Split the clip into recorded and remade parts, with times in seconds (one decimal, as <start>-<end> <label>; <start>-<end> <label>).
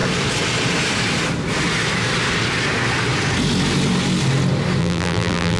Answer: 0.0-4.8 recorded; 4.8-5.6 remade